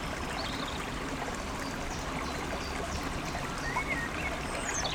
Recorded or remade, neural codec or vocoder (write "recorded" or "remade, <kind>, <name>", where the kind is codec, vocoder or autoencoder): recorded